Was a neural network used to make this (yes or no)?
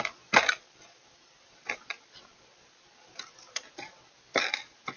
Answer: no